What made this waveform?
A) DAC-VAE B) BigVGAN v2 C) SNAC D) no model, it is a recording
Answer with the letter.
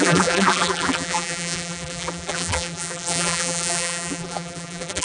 B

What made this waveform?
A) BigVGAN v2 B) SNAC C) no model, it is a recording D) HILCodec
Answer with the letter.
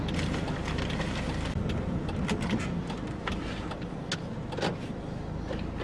C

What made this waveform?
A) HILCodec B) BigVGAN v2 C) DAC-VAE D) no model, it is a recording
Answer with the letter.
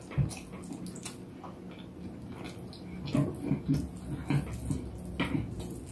D